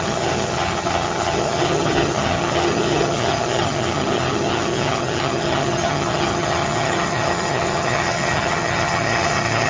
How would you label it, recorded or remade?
remade